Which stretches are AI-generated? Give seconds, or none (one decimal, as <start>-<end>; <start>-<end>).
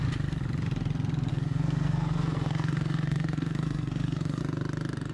1.3-4.4